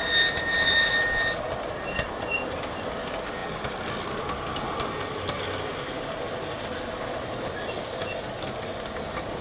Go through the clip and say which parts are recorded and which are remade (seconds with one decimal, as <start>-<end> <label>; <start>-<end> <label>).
0.0-9.4 recorded